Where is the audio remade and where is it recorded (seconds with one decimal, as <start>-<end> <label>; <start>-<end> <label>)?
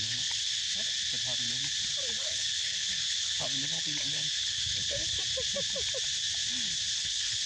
0.0-0.6 remade; 0.6-2.2 recorded; 2.2-5.2 remade; 5.2-6.9 recorded; 6.9-7.5 remade